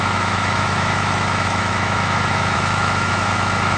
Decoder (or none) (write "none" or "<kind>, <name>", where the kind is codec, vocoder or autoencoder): autoencoder, DAC-VAE